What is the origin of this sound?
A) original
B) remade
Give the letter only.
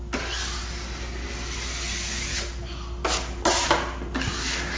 A